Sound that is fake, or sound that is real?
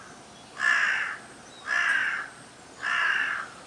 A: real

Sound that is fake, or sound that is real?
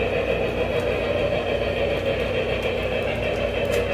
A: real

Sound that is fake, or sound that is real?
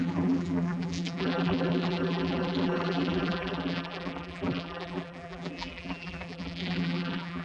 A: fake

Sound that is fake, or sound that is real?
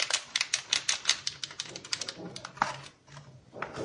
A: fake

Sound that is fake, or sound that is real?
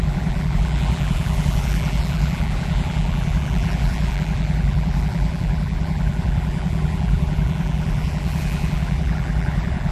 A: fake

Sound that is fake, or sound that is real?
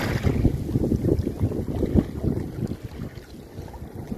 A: real